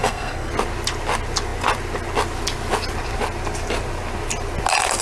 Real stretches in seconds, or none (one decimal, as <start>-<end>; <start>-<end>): 0.5-5.0